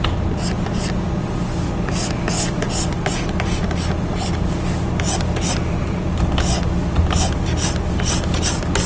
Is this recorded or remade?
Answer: recorded